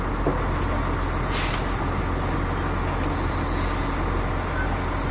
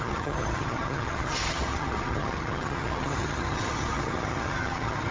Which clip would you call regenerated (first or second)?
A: second